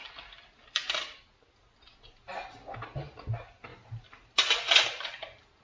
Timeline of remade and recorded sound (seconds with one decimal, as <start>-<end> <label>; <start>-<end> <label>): 0.0-5.6 recorded